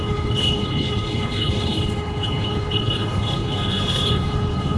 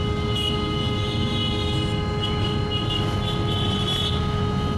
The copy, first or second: first